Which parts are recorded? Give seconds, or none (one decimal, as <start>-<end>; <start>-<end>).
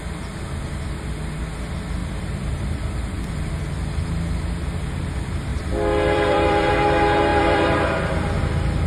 0.0-2.0; 3.8-5.5; 6.7-7.3; 8.4-8.9